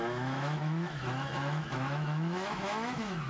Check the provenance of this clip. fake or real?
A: fake